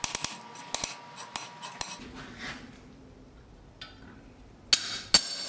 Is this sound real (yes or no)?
yes